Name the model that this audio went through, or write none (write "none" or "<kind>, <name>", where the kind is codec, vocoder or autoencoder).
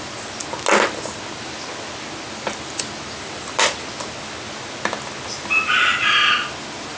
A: none